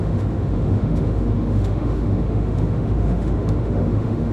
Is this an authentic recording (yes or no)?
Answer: no